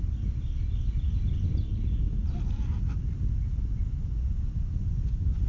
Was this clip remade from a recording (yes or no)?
no